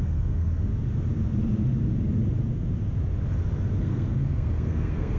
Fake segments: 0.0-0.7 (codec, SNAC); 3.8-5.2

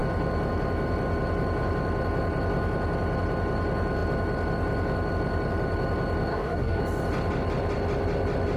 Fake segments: 6.3-6.8 (codec, DAC)

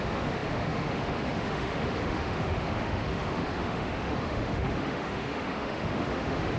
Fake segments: 0.0-6.6 (autoencoder, DAC-VAE)

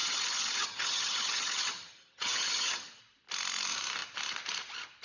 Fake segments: 0.0-3.0 (vocoder, HiFi-GAN)